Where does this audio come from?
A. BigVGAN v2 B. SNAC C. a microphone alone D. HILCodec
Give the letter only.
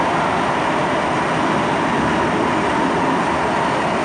C